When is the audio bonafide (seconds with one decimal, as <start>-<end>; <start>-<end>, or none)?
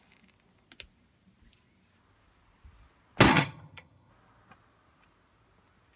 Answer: 0.0-3.3; 4.1-6.0